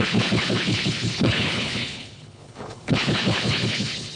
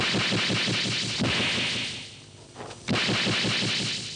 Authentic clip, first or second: second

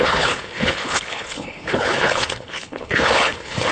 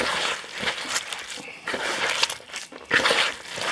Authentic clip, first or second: second